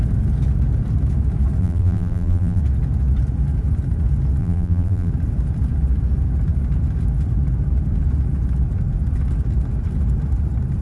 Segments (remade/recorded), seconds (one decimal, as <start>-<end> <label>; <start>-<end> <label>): 0.0-1.6 recorded; 1.6-2.6 remade; 2.6-4.4 recorded; 4.4-5.1 remade; 5.1-10.8 recorded

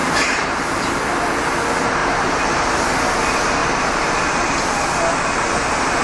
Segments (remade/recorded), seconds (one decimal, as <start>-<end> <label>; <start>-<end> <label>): 0.0-1.1 remade; 1.1-2.0 recorded; 2.0-2.8 remade; 2.8-3.6 recorded; 3.6-4.3 remade; 4.3-6.0 recorded

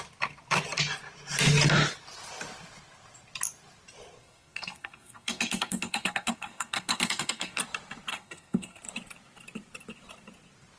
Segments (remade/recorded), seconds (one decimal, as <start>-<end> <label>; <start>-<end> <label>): 0.0-4.2 recorded; 4.2-7.6 remade; 7.6-8.1 recorded; 8.1-8.8 remade; 8.8-10.8 recorded

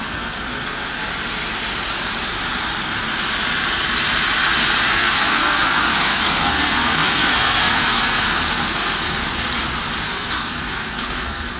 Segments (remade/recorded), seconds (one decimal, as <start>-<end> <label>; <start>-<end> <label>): 0.0-1.1 remade; 1.1-4.9 recorded; 4.9-9.2 remade; 9.2-10.0 recorded; 10.0-11.6 remade